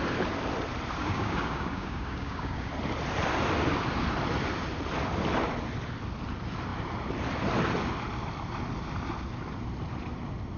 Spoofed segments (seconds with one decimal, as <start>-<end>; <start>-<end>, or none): 1.0-2.7